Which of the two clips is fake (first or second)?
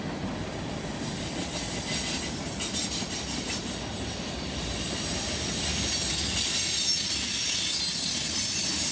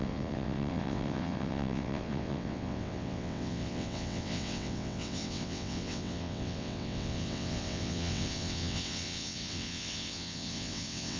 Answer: second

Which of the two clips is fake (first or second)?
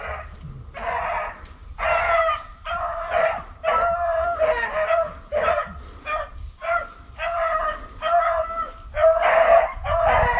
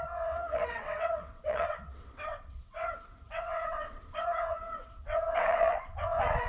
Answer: second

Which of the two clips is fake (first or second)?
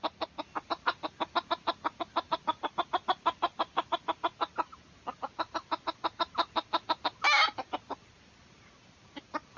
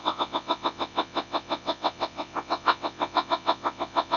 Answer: second